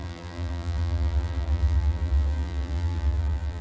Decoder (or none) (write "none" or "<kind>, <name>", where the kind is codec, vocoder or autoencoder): vocoder, BigVGAN v2